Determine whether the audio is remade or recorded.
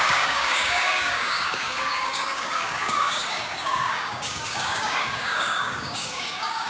remade